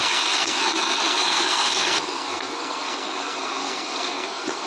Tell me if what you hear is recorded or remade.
remade